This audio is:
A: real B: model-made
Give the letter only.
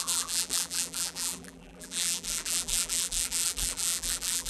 B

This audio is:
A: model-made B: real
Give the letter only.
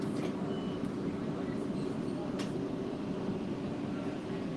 A